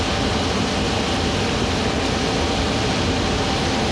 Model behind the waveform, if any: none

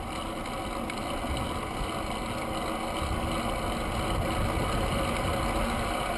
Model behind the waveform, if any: none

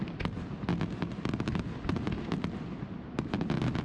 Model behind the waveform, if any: none